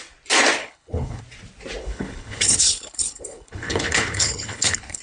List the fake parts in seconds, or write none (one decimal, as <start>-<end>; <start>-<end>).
0.6-1.2; 1.8-5.0